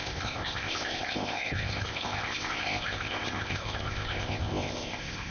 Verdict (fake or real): fake